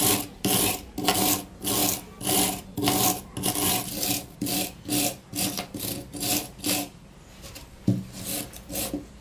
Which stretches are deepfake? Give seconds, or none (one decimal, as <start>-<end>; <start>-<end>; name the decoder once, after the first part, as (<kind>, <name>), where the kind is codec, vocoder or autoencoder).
none

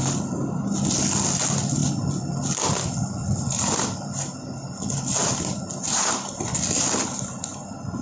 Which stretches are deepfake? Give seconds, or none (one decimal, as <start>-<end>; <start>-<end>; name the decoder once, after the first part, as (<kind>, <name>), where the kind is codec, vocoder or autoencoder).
none

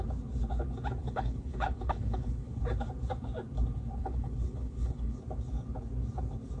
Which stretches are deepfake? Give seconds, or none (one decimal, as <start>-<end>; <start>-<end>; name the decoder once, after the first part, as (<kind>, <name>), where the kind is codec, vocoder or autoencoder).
1.0-2.6 (codec, HILCodec); 4.0-5.2

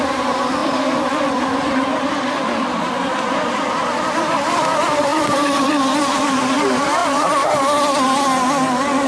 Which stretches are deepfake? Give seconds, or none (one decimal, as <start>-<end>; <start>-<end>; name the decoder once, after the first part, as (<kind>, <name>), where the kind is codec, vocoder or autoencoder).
0.0-7.0 (vocoder, BigVGAN v2)

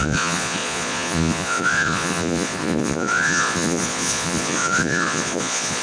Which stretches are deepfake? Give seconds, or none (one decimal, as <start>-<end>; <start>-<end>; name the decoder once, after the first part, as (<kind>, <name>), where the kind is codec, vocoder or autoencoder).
0.0-5.8 (vocoder, Vocos)

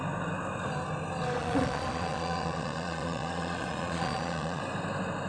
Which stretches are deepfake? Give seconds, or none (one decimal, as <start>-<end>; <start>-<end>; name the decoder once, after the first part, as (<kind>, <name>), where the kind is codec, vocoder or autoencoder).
1.4-4.6 (vocoder, Vocos)

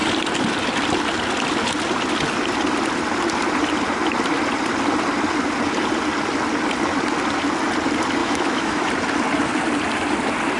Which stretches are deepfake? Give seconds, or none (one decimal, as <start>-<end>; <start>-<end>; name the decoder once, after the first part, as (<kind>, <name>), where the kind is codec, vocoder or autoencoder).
8.2-8.9 (autoencoder, DAC-VAE)